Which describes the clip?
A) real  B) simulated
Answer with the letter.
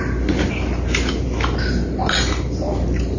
A